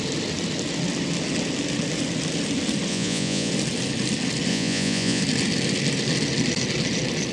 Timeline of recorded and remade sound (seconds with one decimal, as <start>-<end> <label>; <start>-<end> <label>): 0.0-2.9 recorded; 2.9-3.5 remade; 3.5-4.5 recorded; 4.5-5.2 remade; 5.2-7.3 recorded